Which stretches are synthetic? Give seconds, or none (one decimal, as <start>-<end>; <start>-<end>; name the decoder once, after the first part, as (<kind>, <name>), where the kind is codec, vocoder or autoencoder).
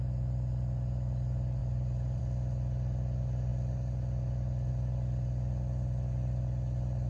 1.6-2.2 (vocoder, BigVGAN v2)